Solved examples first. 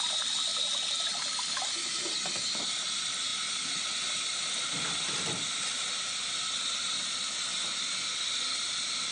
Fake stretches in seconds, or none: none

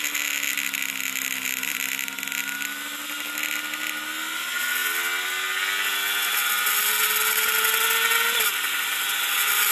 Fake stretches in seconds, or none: none